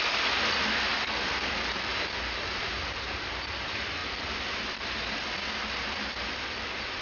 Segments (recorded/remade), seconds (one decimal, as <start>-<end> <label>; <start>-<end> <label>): 0.0-7.0 recorded